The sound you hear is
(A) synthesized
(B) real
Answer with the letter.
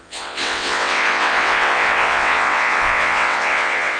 A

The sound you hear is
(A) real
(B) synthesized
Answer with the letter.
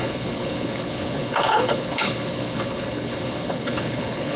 B